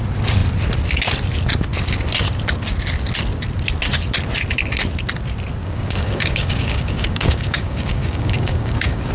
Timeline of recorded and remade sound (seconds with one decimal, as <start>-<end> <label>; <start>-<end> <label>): 0.0-5.6 recorded; 5.6-9.1 remade